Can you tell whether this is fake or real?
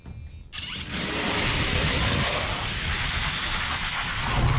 real